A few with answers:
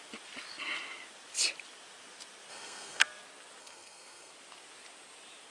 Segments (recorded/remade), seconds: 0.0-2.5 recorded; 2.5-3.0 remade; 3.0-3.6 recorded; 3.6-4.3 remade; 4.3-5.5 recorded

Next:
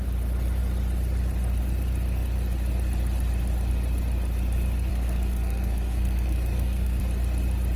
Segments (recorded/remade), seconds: 0.0-4.9 recorded; 4.9-7.0 remade; 7.0-7.8 recorded